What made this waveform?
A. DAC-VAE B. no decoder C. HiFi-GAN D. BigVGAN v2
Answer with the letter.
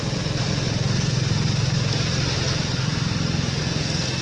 B